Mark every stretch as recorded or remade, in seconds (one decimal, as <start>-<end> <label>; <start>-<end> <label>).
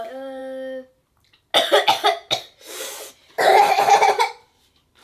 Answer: 0.0-0.4 remade; 0.4-3.1 recorded; 3.1-5.0 remade